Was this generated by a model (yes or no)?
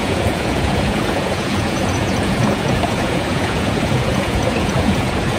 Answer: yes